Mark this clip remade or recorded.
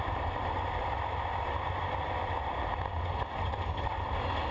recorded